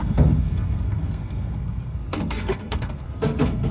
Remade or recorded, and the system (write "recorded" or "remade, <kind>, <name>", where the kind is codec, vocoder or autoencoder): remade, codec, SNAC